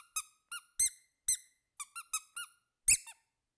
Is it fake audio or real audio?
real